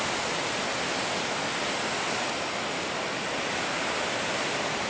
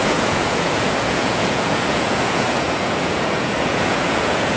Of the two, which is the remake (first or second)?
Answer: second